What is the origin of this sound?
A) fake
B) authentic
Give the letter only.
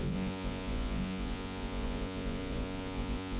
A